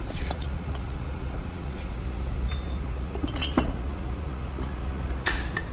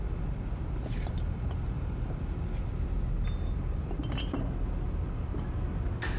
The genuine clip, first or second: second